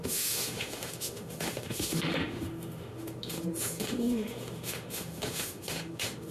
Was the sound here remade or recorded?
remade